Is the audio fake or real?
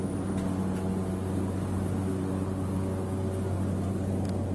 real